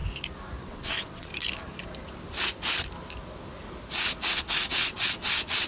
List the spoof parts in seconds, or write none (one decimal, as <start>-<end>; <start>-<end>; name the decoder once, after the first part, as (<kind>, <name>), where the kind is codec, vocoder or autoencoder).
0.6-1.3 (vocoder, WaveNeXt); 4.7-5.7